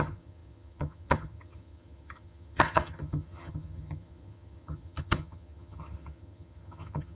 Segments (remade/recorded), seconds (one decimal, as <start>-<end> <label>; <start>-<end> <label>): 0.0-7.1 remade